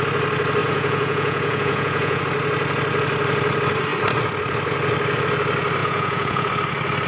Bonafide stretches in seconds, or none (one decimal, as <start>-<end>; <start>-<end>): 0.0-0.6; 2.2-5.8; 6.5-7.1